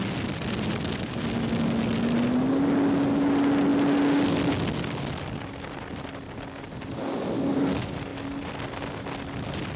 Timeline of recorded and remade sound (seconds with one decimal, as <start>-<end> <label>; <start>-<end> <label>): 0.0-9.8 recorded